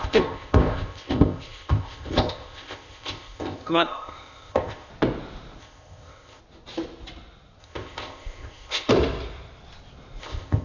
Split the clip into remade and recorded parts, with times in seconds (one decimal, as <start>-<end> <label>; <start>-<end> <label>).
0.0-4.9 remade; 4.9-5.6 recorded; 5.6-6.4 remade; 6.4-7.6 recorded; 7.6-8.9 remade; 8.9-10.2 recorded; 10.2-10.6 remade